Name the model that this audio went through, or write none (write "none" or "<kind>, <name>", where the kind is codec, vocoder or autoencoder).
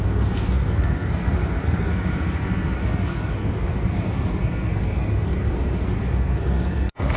codec, SNAC